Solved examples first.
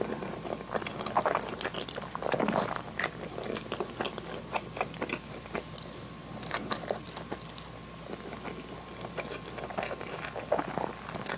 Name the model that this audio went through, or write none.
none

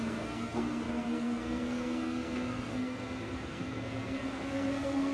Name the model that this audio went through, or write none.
codec, SNAC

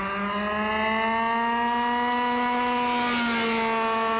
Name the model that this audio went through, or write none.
none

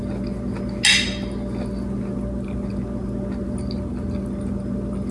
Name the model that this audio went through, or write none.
none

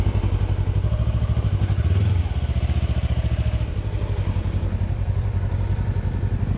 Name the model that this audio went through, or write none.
none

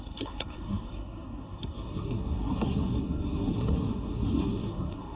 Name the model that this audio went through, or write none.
codec, SNAC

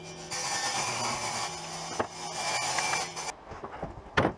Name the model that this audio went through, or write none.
none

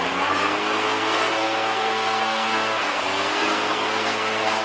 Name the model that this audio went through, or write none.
codec, SNAC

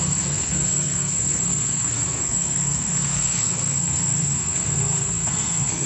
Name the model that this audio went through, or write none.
codec, SNAC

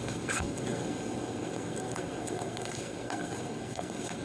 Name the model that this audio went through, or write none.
codec, SNAC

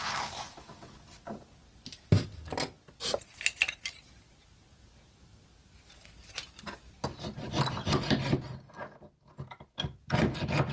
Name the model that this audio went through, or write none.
none